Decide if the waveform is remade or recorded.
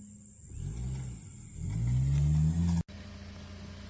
recorded